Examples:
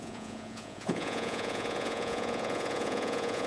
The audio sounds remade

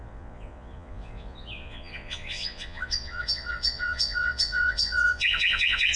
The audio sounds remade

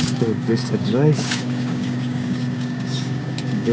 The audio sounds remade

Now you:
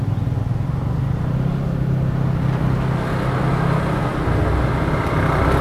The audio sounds recorded